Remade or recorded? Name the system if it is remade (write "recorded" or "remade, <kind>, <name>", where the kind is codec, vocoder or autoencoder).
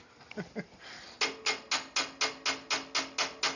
recorded